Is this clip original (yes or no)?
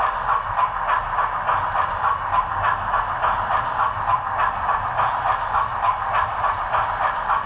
yes